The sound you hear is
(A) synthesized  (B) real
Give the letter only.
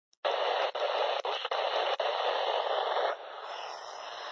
B